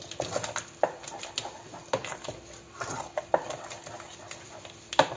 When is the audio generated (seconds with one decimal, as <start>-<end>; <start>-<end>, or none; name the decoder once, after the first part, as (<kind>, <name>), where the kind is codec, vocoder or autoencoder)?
none